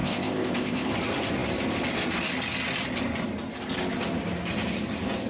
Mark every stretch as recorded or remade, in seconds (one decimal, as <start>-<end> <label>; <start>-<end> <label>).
0.0-0.9 remade; 0.9-5.3 recorded